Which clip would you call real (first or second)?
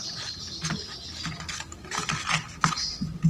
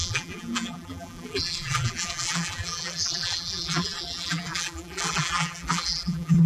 first